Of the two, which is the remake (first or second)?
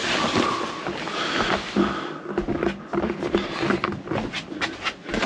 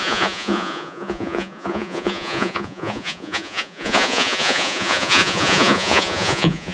second